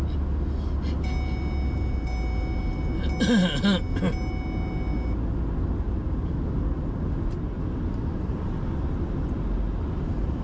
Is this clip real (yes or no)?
yes